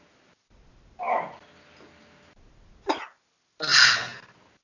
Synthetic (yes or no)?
no